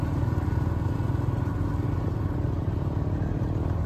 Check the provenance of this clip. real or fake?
real